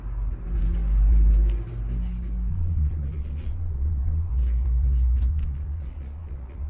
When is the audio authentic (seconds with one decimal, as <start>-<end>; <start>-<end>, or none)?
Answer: 0.0-2.5; 4.3-5.3